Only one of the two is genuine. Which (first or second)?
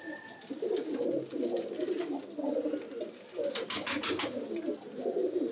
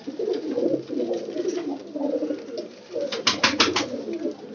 first